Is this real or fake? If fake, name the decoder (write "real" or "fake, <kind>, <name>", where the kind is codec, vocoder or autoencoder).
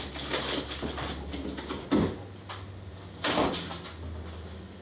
real